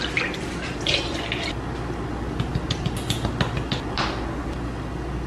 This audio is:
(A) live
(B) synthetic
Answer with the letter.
A